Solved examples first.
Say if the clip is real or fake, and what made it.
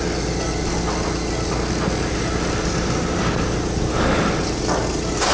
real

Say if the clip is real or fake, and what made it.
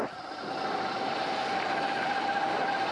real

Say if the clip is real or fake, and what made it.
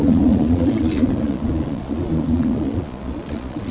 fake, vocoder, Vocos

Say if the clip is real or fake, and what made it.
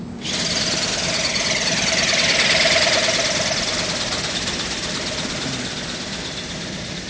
real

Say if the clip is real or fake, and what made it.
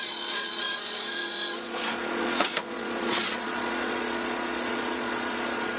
fake, vocoder, Vocos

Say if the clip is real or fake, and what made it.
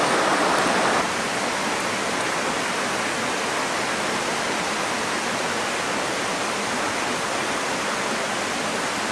real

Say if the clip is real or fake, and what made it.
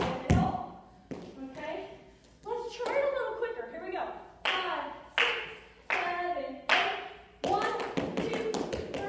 real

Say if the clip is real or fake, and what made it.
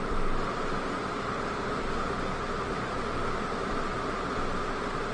real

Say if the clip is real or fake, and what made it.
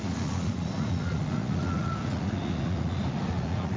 fake, vocoder, Vocos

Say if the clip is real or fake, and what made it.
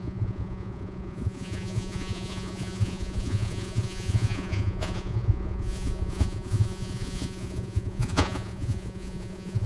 fake, vocoder, Vocos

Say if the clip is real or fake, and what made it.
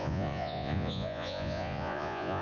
fake, vocoder, Vocos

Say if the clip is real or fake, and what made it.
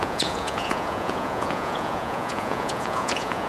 fake, vocoder, Vocos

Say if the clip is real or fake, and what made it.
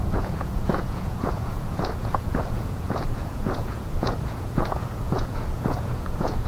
fake, vocoder, Vocos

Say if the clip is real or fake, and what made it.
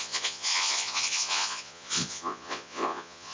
fake, vocoder, Vocos